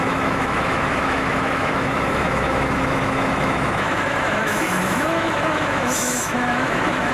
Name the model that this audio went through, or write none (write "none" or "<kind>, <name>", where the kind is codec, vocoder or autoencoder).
autoencoder, DAC-VAE